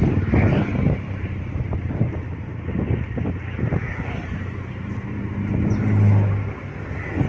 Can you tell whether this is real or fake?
real